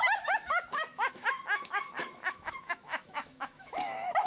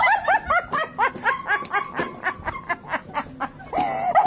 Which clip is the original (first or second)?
second